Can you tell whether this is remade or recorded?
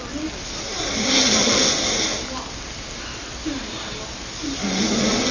recorded